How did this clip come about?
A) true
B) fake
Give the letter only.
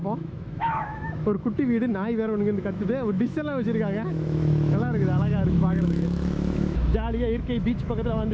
B